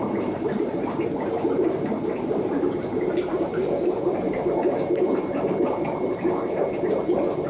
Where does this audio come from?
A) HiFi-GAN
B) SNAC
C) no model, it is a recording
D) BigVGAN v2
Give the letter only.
D